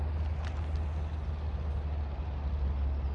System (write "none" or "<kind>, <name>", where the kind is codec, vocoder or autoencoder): none